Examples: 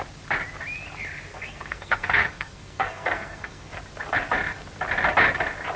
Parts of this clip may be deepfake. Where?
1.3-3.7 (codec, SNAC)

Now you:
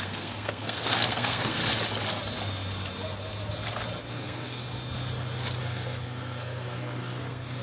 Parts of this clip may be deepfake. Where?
0.0-1.6 (codec, SNAC); 4.1-4.6; 5.6-7.6